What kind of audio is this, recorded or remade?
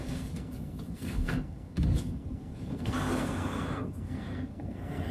remade